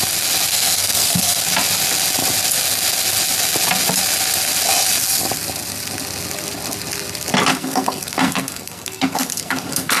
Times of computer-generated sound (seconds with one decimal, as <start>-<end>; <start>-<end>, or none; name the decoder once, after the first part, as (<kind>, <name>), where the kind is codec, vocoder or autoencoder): 0.5-1.4 (codec, SNAC); 7.5-10.0